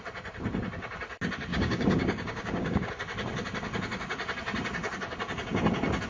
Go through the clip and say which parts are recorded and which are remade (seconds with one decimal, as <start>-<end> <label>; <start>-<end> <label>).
0.0-1.5 recorded; 1.5-2.9 remade; 2.9-6.1 recorded